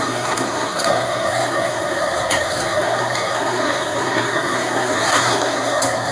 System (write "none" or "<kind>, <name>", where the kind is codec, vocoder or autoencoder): codec, SNAC